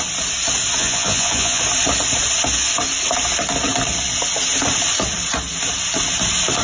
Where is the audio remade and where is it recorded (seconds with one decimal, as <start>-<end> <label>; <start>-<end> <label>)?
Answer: 0.0-0.8 recorded; 0.8-1.6 remade; 1.6-6.6 recorded